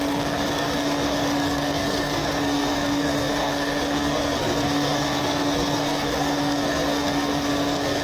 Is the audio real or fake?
fake